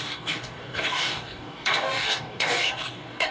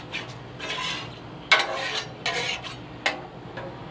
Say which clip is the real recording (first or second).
second